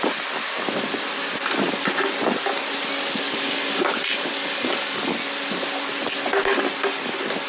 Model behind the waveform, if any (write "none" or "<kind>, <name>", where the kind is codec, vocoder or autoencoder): none